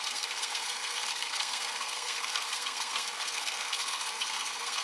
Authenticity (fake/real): fake